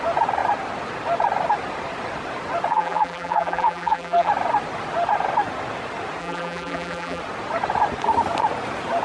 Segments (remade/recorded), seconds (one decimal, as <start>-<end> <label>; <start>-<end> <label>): 0.0-2.7 recorded; 2.7-4.3 remade; 4.3-6.2 recorded; 6.2-7.2 remade; 7.2-9.0 recorded